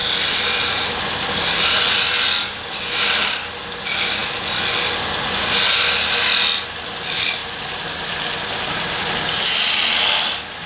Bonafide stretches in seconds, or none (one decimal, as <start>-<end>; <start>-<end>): 0.0-10.7